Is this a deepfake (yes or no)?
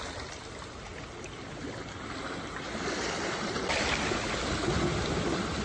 no